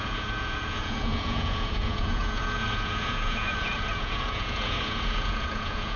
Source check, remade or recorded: remade